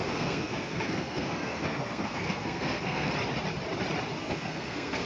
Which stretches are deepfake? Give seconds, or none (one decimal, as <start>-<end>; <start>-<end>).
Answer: 0.0-3.1; 4.2-5.1